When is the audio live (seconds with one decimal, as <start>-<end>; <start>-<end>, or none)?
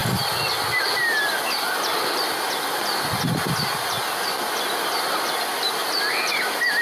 0.0-6.8